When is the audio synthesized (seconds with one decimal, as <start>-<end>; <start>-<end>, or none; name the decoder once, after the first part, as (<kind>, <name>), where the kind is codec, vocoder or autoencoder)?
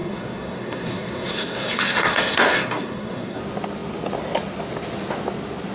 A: 0.0-3.4 (codec, SNAC)